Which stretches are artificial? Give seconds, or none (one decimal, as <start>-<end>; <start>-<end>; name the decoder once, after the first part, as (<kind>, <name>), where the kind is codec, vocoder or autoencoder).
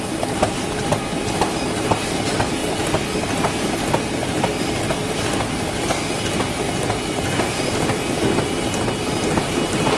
none